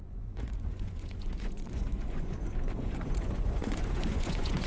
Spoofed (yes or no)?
yes